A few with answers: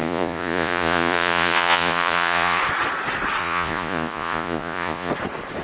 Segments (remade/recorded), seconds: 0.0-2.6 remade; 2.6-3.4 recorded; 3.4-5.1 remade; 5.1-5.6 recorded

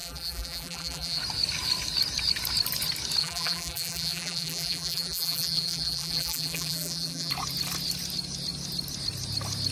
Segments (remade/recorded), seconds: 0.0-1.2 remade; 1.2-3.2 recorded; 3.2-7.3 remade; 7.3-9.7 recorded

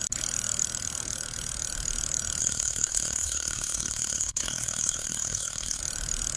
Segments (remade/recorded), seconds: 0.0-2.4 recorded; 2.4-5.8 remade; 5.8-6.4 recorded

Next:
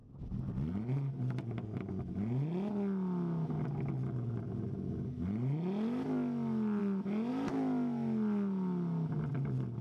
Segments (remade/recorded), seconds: 0.0-9.8 recorded